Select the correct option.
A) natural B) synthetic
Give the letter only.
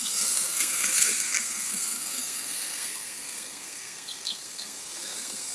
B